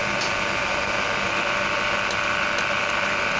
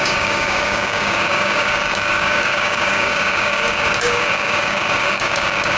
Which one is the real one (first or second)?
first